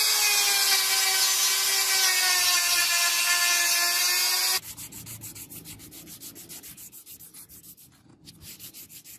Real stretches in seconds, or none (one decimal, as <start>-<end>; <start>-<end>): 0.0-9.2